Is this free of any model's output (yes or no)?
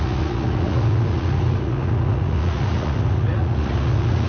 no